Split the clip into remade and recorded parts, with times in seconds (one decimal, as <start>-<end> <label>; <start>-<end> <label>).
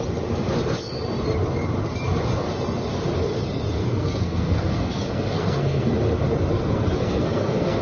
0.0-3.8 recorded; 3.8-5.9 remade; 5.9-6.5 recorded; 6.5-7.8 remade